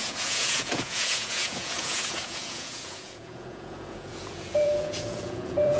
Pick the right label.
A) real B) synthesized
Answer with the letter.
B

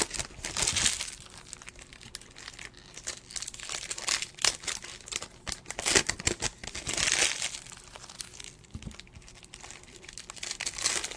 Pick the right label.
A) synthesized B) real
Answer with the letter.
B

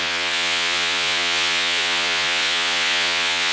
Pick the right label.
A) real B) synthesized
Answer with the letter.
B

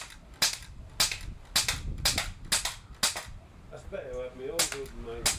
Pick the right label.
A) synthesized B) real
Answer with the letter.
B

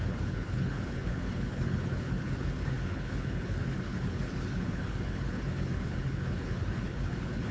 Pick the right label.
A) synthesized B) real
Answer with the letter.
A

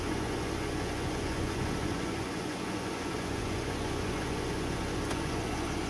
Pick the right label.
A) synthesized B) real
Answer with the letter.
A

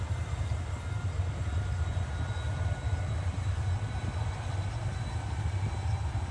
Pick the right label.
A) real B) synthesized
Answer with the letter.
A